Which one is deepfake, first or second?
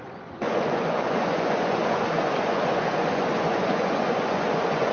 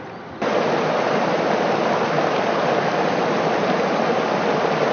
first